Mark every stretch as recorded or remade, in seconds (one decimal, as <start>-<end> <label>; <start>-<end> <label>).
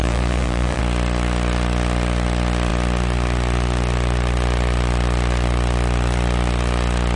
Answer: 0.0-0.8 remade; 0.8-7.2 recorded